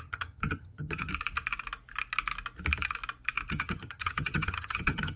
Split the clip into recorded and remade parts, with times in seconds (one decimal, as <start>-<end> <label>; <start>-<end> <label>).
0.0-1.1 remade; 1.1-3.5 recorded; 3.5-5.2 remade